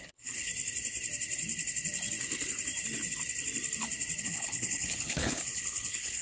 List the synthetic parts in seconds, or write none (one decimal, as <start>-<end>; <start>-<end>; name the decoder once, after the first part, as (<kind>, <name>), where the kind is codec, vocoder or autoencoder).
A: 0.0-0.5 (codec, HILCodec); 4.2-6.2

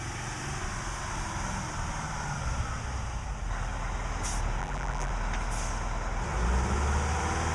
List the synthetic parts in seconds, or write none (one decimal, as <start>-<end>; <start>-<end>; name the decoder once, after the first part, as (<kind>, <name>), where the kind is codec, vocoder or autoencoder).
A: 4.6-5.1 (vocoder, BigVGAN v2)

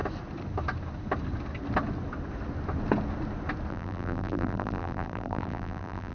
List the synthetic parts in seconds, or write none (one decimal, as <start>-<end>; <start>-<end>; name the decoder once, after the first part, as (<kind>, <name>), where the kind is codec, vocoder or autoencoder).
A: 3.7-6.1 (vocoder, BigVGAN v2)